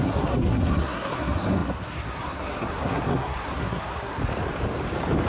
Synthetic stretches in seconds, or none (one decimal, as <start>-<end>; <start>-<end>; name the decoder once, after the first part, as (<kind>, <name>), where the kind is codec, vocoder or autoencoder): 0.0-4.2 (codec, SNAC)